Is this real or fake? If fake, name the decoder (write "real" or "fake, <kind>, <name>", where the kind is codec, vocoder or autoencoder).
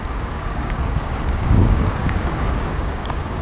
fake, codec, DAC